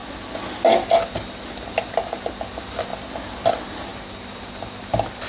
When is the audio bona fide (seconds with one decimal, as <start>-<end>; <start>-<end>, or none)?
0.0-5.3

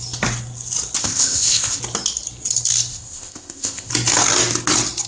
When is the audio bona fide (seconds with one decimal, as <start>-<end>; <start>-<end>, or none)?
0.0-1.0; 1.8-2.9; 3.9-5.1

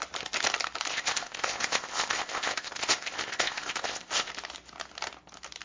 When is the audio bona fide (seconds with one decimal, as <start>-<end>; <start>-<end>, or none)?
0.0-0.9; 4.3-5.6

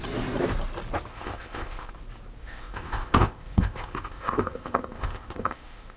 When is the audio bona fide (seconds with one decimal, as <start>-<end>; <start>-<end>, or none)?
0.0-1.1; 1.9-2.4

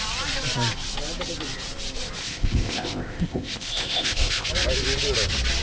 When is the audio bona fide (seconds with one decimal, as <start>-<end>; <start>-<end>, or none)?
0.0-2.2; 4.5-5.6

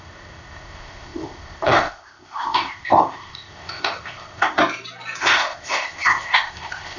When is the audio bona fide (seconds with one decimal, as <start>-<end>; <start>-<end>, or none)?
4.6-5.2

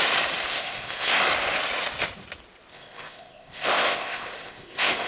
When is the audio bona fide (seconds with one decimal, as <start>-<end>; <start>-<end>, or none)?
0.0-0.5; 1.2-2.7

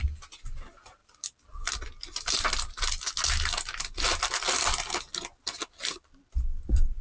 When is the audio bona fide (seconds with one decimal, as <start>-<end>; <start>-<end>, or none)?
0.0-7.0